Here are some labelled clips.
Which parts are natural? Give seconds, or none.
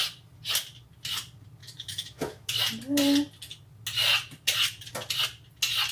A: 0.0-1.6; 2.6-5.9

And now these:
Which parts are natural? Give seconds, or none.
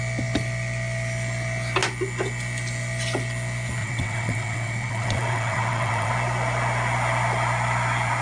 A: 0.0-3.8; 6.1-8.2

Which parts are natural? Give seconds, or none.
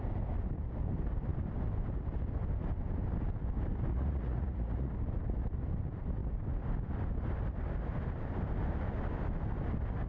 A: 0.0-3.9; 4.9-10.1